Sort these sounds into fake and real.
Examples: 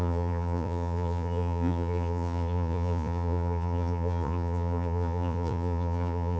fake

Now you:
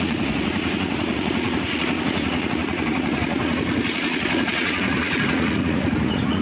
fake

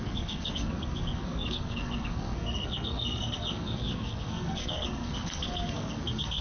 fake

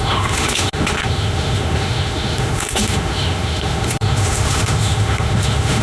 fake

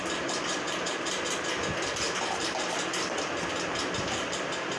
real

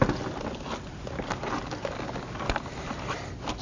real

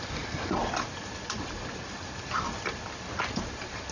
real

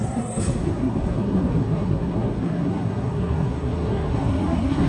fake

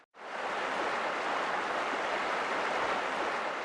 real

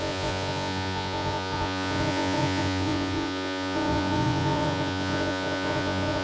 fake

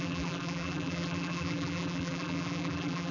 fake